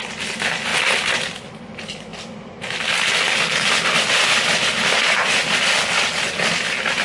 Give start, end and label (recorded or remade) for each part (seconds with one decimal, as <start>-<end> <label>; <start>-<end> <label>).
0.0-7.0 recorded